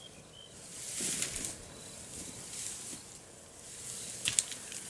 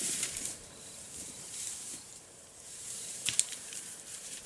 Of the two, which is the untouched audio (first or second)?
first